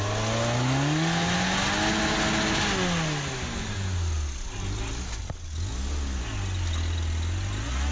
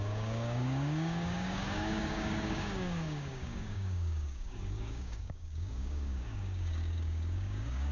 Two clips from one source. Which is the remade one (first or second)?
second